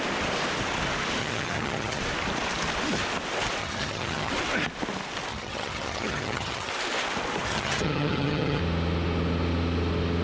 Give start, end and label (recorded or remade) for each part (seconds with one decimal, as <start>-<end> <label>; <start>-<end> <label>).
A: 0.0-1.2 recorded; 1.2-2.0 remade; 2.0-3.6 recorded; 3.6-4.3 remade; 4.3-5.3 recorded; 5.3-6.7 remade; 6.7-7.5 recorded; 7.5-8.6 remade; 8.6-10.2 recorded